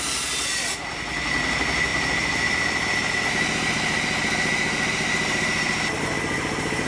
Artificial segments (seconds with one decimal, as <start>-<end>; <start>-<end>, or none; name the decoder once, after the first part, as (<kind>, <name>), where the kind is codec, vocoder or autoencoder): none